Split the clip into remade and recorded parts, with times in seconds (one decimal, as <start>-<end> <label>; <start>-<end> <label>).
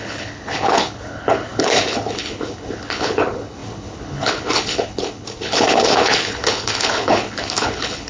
0.0-8.1 remade